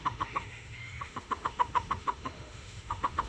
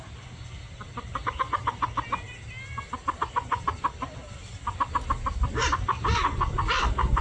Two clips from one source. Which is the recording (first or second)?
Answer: second